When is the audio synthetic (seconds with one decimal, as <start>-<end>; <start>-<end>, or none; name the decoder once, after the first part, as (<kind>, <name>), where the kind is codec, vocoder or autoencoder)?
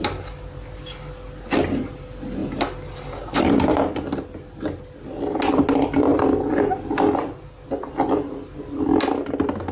none